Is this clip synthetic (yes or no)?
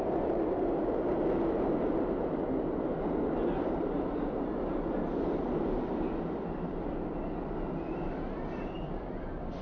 no